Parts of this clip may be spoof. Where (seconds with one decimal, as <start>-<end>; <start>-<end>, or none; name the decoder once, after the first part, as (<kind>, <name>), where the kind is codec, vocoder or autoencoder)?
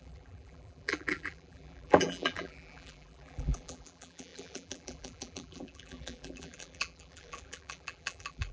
0.0-8.5 (vocoder, BigVGAN v2)